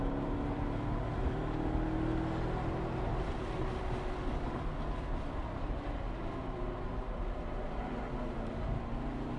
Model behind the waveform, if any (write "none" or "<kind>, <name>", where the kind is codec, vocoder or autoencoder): none